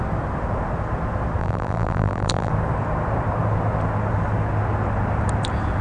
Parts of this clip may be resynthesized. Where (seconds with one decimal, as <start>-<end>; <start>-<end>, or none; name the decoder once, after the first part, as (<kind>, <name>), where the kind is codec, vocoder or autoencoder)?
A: 1.4-2.5 (vocoder, BigVGAN v2)